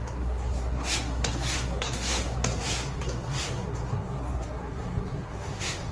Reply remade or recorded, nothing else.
remade